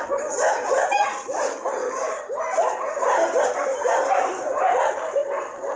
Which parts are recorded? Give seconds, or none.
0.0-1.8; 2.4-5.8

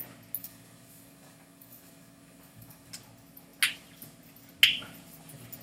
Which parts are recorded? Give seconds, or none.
0.0-0.4; 2.9-5.6

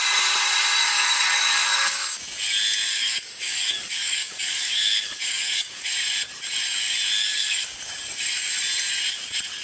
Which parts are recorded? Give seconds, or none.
0.0-0.8; 2.2-2.9; 5.9-7.2; 7.8-9.6

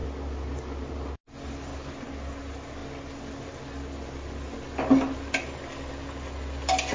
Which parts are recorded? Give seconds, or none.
0.0-6.9

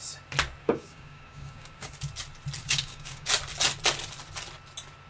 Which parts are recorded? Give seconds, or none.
0.0-0.6; 1.9-2.6; 3.3-5.1

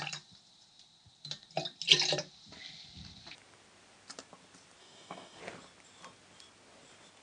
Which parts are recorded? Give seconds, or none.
0.0-4.8; 5.4-7.2

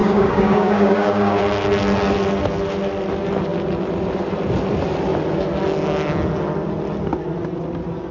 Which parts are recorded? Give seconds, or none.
1.4-8.1